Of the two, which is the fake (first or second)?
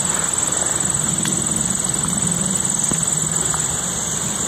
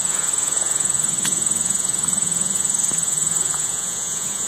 second